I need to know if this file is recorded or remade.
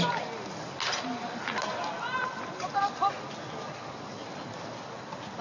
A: recorded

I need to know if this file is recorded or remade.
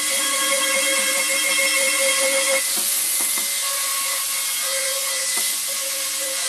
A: remade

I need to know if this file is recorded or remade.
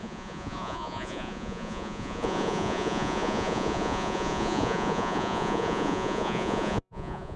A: remade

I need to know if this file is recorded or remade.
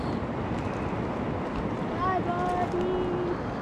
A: recorded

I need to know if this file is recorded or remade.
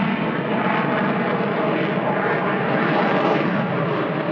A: recorded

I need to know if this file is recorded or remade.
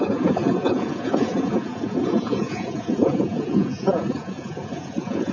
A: remade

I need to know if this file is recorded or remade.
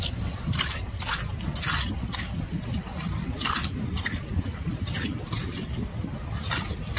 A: recorded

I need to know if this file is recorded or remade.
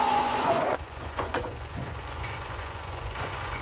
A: remade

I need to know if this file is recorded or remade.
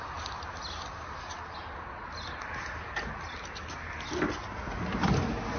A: recorded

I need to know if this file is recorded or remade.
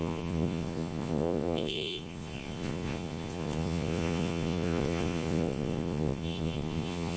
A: remade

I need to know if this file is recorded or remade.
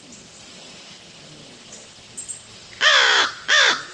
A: recorded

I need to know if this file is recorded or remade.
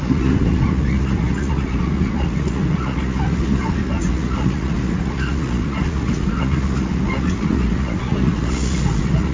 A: remade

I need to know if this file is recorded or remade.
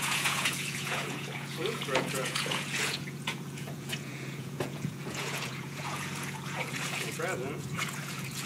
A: remade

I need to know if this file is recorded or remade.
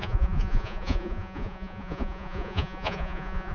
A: remade